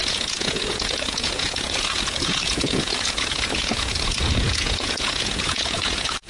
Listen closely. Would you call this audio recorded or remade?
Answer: remade